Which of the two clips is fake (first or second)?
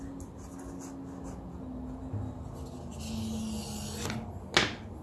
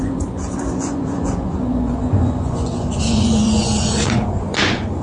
second